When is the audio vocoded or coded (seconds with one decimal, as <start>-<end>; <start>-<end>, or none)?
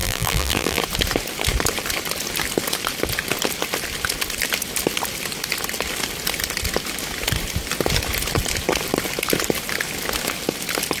0.0-0.8